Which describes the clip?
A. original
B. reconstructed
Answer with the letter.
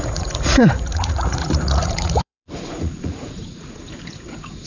B